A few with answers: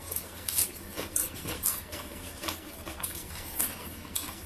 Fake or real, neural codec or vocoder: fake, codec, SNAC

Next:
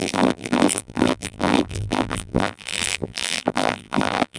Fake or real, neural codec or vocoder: fake, vocoder, BigVGAN v2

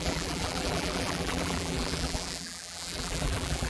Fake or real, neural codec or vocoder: fake, vocoder, BigVGAN v2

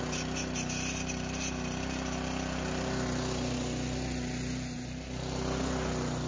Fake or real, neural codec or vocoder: real